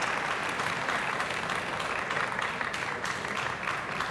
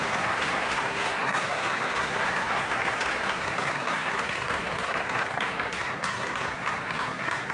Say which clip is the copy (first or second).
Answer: second